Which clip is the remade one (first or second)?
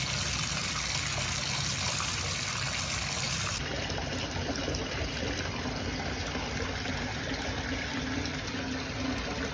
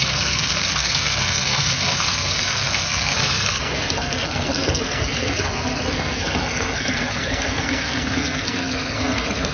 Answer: second